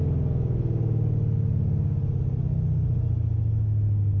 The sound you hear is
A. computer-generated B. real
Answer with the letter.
B